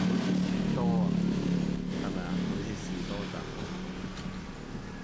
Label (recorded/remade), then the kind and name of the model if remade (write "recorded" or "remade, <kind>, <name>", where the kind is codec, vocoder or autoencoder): recorded